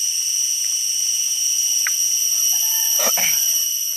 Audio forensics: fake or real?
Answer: real